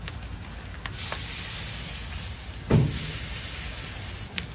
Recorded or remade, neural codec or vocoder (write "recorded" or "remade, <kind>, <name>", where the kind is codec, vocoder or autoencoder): recorded